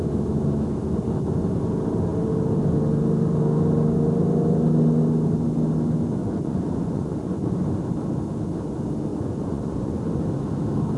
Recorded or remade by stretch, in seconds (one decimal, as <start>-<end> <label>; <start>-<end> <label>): 0.0-6.2 recorded; 6.2-7.5 remade; 7.5-9.1 recorded; 9.1-10.0 remade; 10.0-11.0 recorded